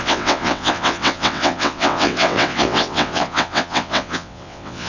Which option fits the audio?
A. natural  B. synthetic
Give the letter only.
B